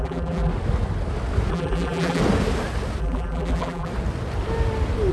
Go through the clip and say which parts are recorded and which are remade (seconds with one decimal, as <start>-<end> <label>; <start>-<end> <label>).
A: 0.0-0.5 remade; 0.5-1.5 recorded; 1.5-2.2 remade; 2.2-3.0 recorded; 3.0-3.9 remade; 3.9-5.1 recorded